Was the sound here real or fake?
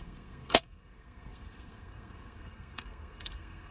fake